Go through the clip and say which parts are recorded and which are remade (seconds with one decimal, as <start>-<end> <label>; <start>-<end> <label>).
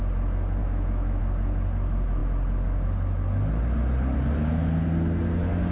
0.0-0.6 recorded; 0.6-1.2 remade; 1.2-5.7 recorded